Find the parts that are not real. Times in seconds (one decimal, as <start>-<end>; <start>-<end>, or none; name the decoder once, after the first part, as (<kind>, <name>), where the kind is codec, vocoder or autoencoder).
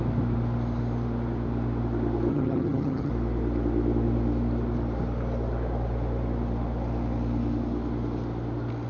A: 2.3-3.1 (vocoder, HiFi-GAN)